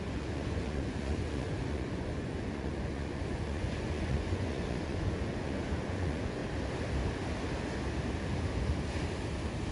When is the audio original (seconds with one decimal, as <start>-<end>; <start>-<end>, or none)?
6.4-9.7